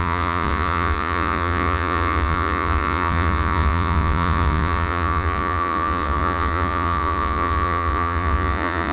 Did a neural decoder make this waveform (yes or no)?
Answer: yes